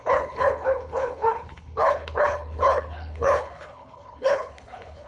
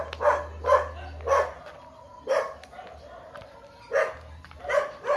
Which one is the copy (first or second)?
first